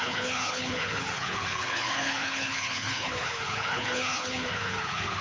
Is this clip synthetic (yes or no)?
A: yes